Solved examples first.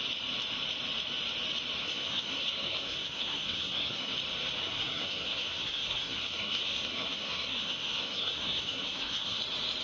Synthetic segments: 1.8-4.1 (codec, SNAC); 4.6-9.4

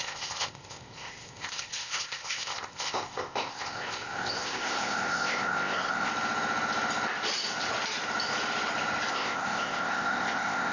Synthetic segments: 0.0-6.1 (codec, ZipCodec); 9.1-10.7

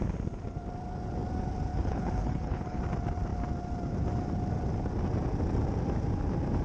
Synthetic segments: 1.7-2.8 (codec, HILCodec)